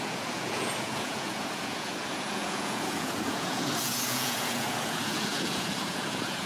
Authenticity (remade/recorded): remade